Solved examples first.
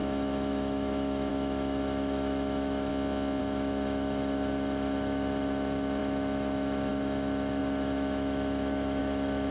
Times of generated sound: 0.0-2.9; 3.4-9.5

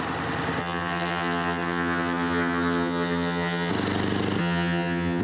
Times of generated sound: 0.6-3.7; 4.4-5.2

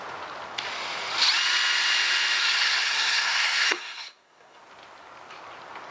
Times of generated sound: 2.4-4.6

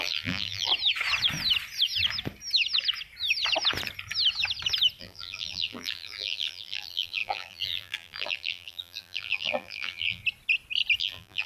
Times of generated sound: 0.0-0.7; 5.0-10.2; 11.0-11.5

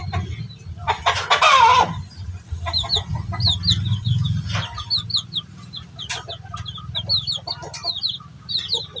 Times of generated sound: none

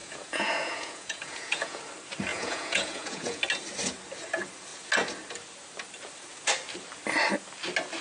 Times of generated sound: 0.0-1.8; 2.3-3.4